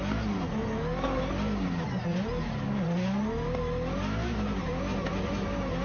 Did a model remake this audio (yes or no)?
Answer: no